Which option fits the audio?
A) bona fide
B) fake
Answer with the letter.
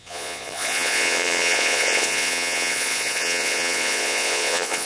B